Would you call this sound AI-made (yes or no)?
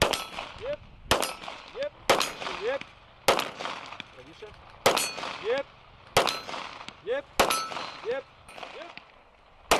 no